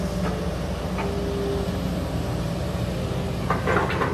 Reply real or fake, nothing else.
real